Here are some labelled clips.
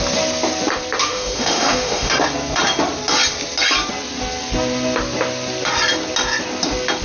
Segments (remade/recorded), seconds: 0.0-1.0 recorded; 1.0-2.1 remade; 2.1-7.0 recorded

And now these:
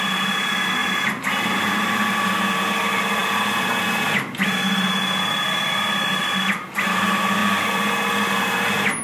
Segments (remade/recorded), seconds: 0.0-9.0 recorded

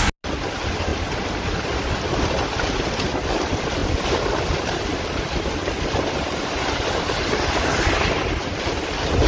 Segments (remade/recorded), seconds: 0.0-9.3 recorded

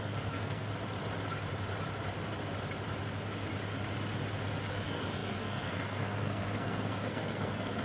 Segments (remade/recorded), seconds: 0.0-0.7 remade; 0.7-4.7 recorded; 4.7-7.8 remade

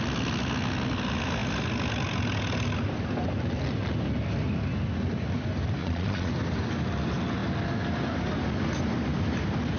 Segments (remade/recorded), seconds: 0.0-5.8 recorded; 5.8-6.3 remade; 6.3-9.8 recorded

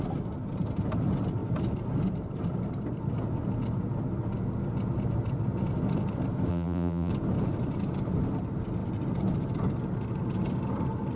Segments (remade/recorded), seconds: 0.0-6.5 recorded; 6.5-7.1 remade; 7.1-11.2 recorded